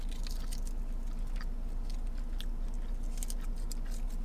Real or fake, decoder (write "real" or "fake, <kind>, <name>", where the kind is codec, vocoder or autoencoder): real